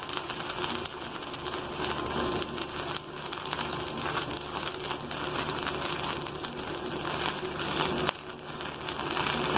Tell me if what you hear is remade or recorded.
recorded